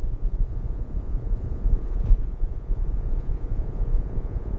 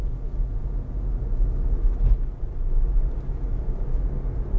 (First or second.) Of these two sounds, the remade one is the first